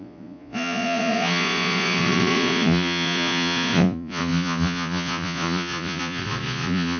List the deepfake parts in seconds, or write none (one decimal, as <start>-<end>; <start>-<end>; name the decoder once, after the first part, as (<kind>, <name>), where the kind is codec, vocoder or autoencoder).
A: 0.0-7.0 (vocoder, Vocos)